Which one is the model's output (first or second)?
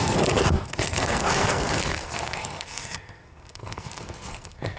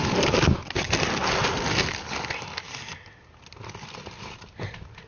first